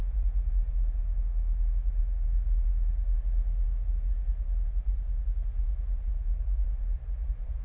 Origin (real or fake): real